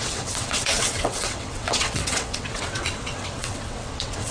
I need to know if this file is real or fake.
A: fake